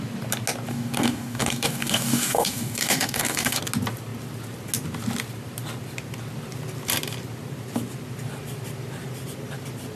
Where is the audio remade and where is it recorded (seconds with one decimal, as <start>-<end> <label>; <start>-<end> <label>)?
0.0-0.7 recorded; 0.7-3.6 remade; 3.6-10.0 recorded